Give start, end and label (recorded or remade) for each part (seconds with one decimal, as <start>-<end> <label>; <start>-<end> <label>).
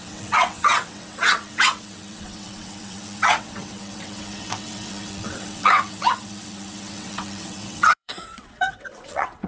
0.0-9.5 remade